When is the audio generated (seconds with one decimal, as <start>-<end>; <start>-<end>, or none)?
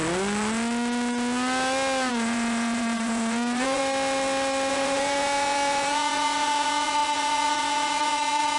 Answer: 2.1-3.8; 4.7-8.6